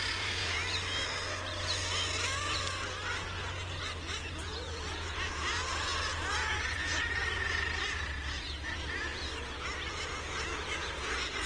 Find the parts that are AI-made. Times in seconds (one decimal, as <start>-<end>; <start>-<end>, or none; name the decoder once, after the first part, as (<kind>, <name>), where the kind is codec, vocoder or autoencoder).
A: 0.0-0.6 (vocoder, Vocos); 4.2-9.1; 9.9-11.5